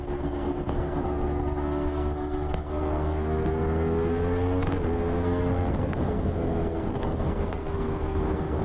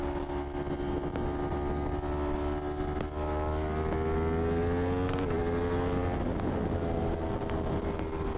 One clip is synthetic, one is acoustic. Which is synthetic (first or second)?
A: first